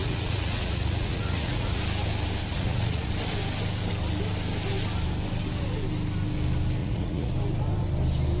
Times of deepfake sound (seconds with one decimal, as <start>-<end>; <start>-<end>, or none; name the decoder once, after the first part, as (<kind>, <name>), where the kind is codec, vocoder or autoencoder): 0.0-1.8 (vocoder, Vocos); 2.5-3.1; 6.8-7.3